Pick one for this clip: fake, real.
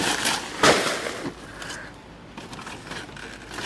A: real